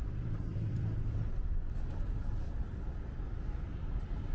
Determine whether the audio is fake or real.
fake